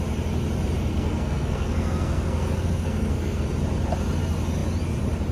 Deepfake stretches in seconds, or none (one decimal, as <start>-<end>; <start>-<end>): 0.9-3.4